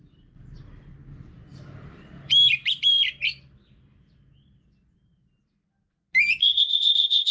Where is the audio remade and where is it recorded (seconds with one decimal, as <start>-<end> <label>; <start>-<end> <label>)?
0.0-6.4 recorded; 6.4-7.3 remade

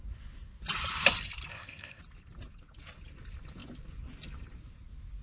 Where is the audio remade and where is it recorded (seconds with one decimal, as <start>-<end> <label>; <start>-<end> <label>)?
0.0-1.5 recorded; 1.5-2.0 remade; 2.0-5.2 recorded

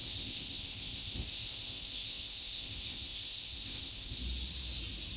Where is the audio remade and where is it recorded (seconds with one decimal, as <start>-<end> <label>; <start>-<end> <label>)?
0.0-4.2 remade; 4.2-5.2 recorded

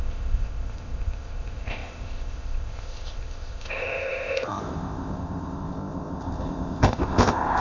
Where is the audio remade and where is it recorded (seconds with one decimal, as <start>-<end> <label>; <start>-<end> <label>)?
0.0-7.6 remade

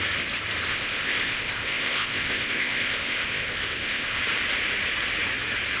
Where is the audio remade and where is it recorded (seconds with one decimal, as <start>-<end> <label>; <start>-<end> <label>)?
0.0-0.7 recorded; 0.7-4.2 remade; 4.2-5.8 recorded